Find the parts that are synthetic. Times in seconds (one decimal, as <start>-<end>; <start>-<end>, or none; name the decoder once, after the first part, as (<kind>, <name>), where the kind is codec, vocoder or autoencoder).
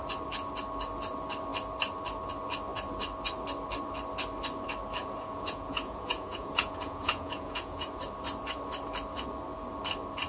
5.0-8.0 (vocoder, Vocos)